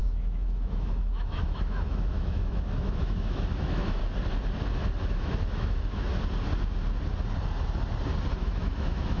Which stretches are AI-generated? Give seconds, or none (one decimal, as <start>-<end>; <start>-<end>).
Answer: 0.0-4.0; 5.1-6.1; 8.3-9.2